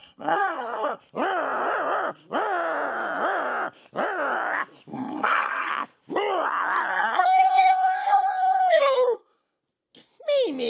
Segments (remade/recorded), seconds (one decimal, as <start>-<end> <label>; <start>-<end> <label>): 0.0-1.0 remade; 1.0-4.9 recorded; 4.9-5.7 remade; 5.7-6.9 recorded; 6.9-9.6 remade; 9.6-10.7 recorded